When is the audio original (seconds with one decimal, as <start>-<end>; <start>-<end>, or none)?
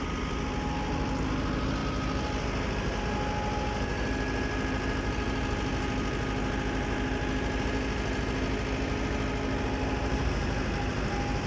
0.0-11.5